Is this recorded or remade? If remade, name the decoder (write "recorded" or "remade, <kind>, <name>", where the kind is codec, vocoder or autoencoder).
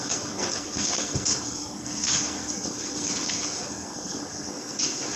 remade, codec, SNAC